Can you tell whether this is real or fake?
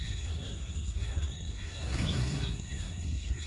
fake